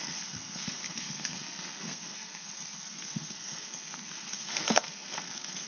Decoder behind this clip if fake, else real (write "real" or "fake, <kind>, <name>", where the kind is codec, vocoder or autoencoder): fake, codec, SNAC